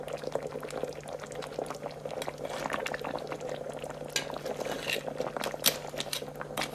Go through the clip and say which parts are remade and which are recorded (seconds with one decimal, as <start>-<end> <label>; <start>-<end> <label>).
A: 0.0-6.7 recorded